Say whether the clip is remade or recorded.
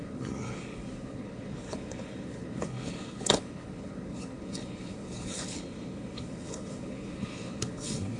remade